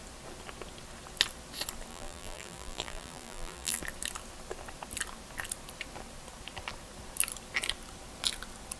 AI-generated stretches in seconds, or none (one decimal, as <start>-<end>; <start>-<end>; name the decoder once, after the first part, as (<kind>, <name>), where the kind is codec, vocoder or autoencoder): 1.9-3.8 (vocoder, BigVGAN v2)